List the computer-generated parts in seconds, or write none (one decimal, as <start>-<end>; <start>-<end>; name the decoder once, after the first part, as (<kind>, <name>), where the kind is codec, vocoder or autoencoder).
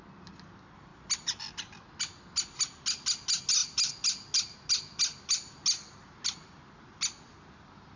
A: none